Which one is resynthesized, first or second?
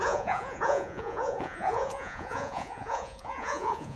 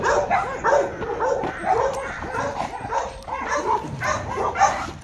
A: first